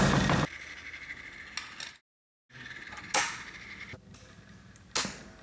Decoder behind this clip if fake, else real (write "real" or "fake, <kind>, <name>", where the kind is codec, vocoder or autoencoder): real